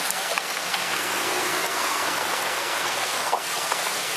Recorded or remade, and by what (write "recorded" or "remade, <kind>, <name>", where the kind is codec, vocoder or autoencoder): remade, codec, SNAC